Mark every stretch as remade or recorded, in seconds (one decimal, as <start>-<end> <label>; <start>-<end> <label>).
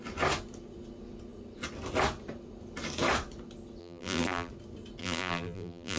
0.0-3.8 recorded; 3.8-4.5 remade; 4.5-5.0 recorded; 5.0-6.0 remade